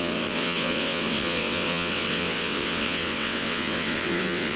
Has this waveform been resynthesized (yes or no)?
yes